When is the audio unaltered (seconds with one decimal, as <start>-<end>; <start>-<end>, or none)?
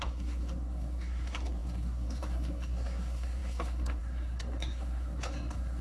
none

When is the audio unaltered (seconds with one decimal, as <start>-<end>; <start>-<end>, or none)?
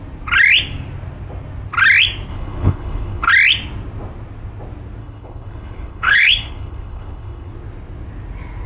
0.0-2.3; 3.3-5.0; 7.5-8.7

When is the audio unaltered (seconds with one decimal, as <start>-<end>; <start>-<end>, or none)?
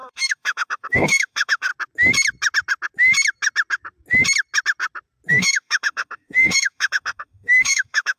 1.7-5.3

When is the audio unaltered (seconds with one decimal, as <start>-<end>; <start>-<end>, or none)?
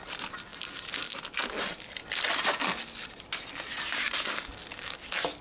0.0-5.4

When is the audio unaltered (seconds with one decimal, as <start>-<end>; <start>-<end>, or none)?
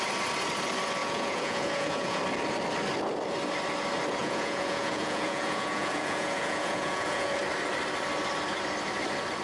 0.0-1.0; 2.2-4.2; 7.4-9.4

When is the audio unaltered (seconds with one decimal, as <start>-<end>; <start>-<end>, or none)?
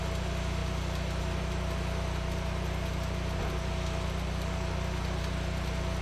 0.0-6.0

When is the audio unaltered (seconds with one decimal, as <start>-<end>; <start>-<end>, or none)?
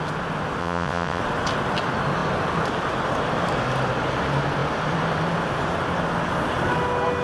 0.0-0.6; 1.2-7.2